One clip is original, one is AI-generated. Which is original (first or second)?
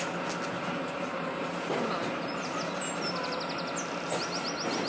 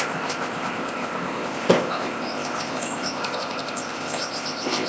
first